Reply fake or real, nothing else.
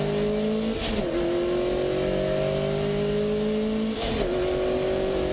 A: real